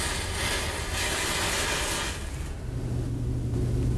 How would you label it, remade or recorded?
recorded